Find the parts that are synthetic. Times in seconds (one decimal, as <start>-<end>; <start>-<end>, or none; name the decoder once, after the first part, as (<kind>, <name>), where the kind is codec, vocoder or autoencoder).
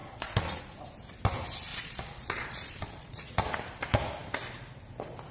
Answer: 0.0-0.6 (vocoder, Vocos); 1.7-3.3